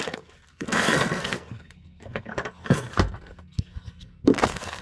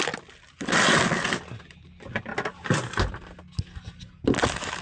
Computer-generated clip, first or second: first